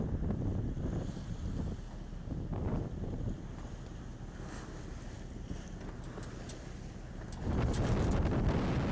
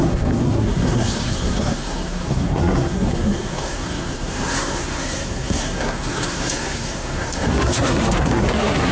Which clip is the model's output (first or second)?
second